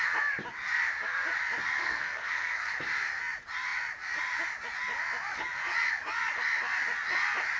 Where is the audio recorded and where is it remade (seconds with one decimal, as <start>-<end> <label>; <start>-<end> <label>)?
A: 0.0-1.8 recorded; 1.8-2.7 remade; 2.7-7.6 recorded